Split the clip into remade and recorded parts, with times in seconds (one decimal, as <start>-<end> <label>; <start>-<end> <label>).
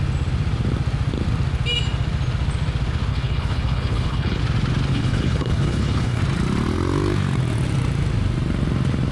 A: 0.0-3.1 recorded; 3.1-4.4 remade; 4.4-4.9 recorded; 4.9-6.2 remade; 6.2-9.1 recorded